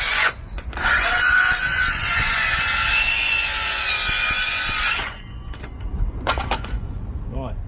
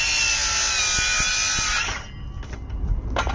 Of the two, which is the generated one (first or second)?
first